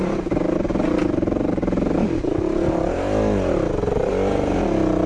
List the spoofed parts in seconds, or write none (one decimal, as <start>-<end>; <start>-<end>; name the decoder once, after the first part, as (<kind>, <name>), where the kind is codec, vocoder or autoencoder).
none